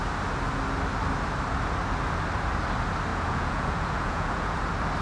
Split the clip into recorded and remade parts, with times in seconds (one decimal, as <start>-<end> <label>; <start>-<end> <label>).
0.0-3.1 recorded; 3.1-4.6 remade; 4.6-5.0 recorded